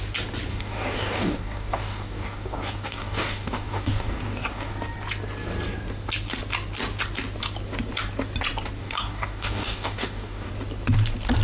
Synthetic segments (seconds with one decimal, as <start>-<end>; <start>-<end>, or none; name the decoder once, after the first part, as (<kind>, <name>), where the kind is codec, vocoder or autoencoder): 0.5-4.7 (codec, DAC); 8.8-10.5